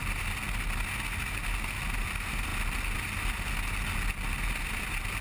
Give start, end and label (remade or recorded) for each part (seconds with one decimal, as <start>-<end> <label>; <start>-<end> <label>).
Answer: 0.0-5.2 recorded